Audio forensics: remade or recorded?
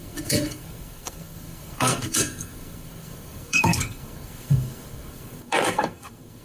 remade